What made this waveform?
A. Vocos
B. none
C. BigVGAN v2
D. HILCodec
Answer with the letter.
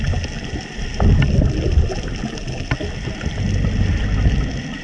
B